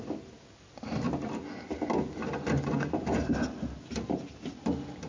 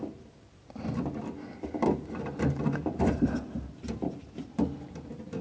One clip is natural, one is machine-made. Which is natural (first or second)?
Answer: first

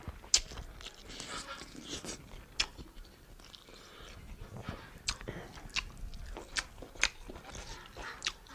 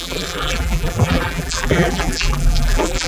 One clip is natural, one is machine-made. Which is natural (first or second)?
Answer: first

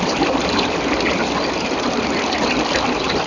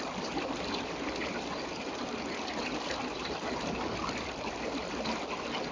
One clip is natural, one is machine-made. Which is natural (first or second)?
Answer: second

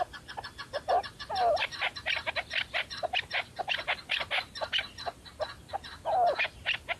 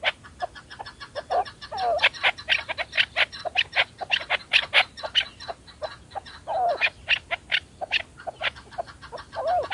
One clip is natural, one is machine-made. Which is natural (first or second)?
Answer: second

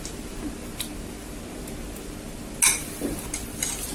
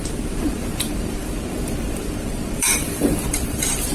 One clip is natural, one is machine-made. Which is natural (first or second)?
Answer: first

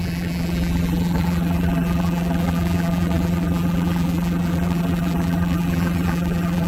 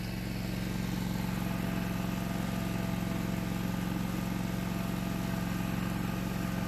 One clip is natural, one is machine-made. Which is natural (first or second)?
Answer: second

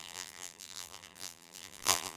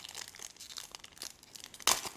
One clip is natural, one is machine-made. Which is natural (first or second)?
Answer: second